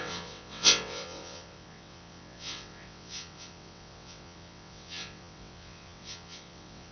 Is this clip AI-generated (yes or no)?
yes